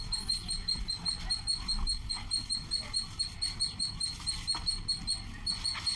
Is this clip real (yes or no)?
yes